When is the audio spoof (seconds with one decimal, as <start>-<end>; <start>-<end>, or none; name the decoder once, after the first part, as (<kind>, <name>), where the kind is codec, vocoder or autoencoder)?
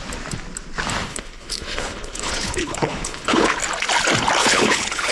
1.1-3.6 (codec, HILCodec); 4.4-5.1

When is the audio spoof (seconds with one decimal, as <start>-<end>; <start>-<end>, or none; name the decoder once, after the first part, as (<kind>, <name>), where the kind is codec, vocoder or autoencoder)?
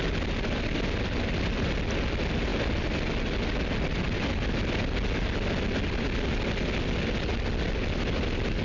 none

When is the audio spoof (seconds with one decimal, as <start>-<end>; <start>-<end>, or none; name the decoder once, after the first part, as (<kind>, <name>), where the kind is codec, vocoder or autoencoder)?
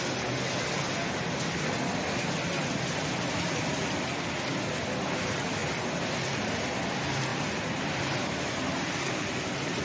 none